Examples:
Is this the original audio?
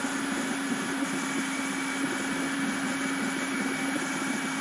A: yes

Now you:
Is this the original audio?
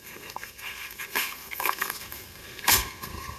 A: no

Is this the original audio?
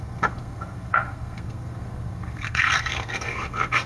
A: no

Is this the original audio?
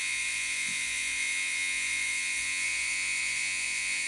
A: no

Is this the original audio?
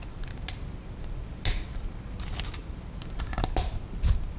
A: yes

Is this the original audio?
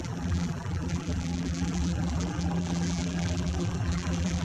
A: no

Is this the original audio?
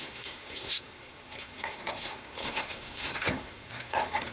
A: no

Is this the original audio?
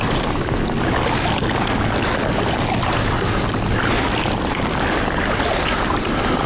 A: yes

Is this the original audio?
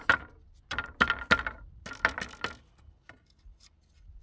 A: yes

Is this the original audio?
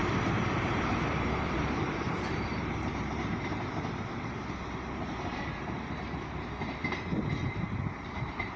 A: no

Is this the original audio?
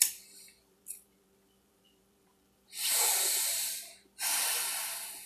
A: no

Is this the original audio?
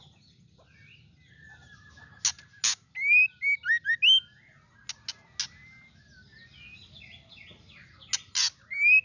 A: yes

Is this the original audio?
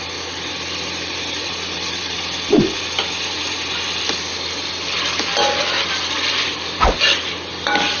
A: yes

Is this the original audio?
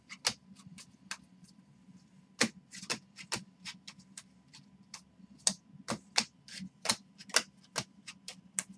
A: yes